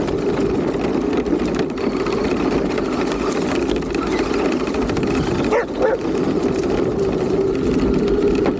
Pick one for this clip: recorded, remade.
recorded